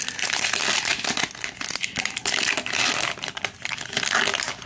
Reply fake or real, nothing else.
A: real